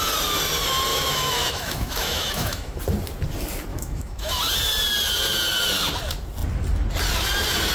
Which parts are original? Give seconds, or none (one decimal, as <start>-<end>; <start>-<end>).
0.0-0.9; 2.8-3.7; 4.4-7.7